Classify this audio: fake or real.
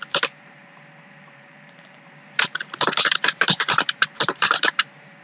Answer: fake